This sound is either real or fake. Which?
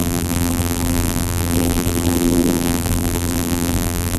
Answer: fake